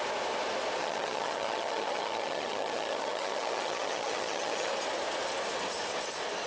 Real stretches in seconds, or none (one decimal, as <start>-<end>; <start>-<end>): 0.0-0.8; 4.7-6.5